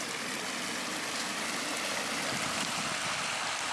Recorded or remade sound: recorded